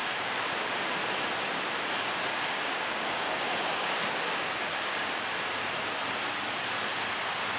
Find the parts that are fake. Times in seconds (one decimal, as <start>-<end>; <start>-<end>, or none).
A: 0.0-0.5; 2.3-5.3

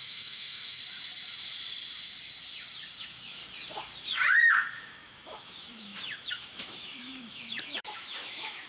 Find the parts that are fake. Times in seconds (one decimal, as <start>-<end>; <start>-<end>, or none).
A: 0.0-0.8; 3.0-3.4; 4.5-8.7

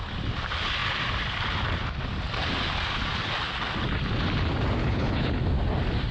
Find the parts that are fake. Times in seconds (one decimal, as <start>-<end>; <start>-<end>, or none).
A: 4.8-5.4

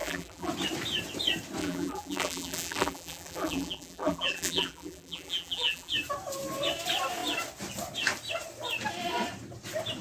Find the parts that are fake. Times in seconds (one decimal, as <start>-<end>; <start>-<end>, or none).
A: 0.0-0.5; 1.6-5.9

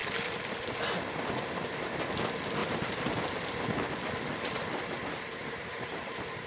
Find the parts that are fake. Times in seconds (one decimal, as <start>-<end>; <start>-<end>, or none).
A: 2.6-3.6; 5.4-6.5